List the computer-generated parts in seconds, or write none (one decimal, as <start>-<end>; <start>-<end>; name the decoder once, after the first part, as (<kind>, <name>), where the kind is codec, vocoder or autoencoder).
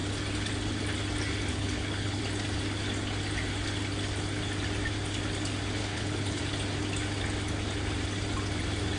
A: 1.5-2.2 (codec, HILCodec); 5.8-6.4